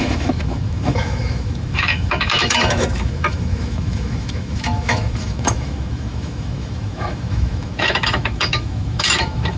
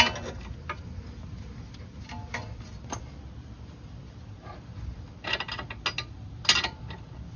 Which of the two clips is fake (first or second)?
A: first